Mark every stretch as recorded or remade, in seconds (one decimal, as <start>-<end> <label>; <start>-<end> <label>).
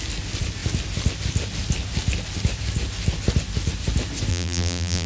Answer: 0.0-4.3 recorded; 4.3-5.1 remade